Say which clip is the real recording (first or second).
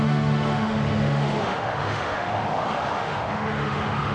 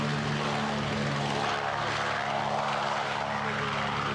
second